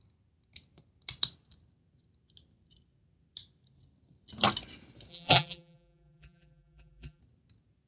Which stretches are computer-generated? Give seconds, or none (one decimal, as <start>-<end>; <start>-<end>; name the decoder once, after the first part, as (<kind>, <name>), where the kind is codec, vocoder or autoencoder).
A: 5.1-7.2 (vocoder, BigVGAN v2)